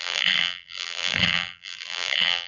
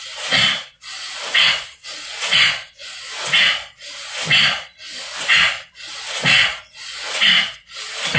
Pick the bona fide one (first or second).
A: second